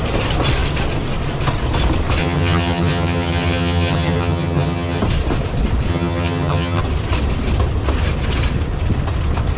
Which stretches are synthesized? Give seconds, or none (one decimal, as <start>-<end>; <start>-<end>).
2.2-5.0; 5.9-6.8